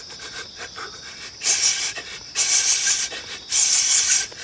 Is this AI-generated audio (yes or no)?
no